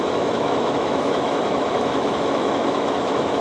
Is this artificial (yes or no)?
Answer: yes